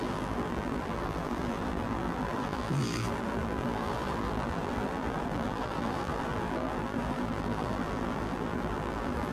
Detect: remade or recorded remade